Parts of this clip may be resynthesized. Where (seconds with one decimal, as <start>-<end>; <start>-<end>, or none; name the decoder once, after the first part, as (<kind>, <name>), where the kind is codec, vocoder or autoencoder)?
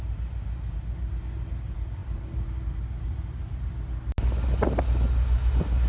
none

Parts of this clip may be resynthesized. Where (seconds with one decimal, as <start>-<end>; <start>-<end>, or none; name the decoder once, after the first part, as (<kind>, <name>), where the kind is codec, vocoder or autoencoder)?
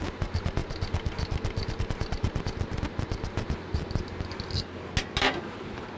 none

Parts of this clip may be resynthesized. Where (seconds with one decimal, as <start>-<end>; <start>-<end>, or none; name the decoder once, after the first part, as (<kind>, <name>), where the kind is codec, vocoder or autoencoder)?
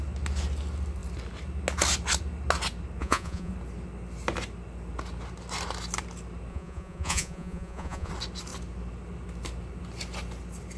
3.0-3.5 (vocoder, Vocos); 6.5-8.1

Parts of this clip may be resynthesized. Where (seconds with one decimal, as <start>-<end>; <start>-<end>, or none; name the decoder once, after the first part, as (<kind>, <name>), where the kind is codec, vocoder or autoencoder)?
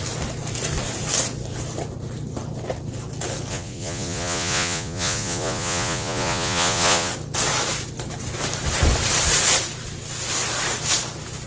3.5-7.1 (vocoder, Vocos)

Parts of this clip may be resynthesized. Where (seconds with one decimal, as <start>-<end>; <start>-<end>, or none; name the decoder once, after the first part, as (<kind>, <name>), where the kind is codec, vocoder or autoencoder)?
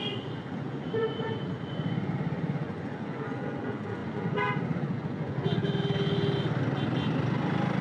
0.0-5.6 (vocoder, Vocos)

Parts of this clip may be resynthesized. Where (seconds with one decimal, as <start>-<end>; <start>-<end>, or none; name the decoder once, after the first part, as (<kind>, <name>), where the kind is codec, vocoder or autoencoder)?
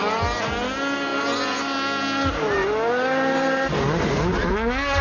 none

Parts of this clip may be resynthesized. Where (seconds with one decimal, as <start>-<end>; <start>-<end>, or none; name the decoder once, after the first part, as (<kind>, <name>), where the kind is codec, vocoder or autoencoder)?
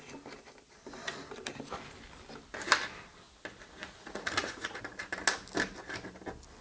3.8-4.8 (vocoder, Vocos)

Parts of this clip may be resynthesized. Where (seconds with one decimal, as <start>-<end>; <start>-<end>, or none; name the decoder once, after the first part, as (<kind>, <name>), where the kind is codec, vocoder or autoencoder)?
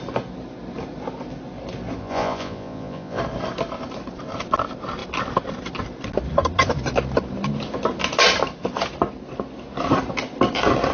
2.0-3.2 (vocoder, Vocos)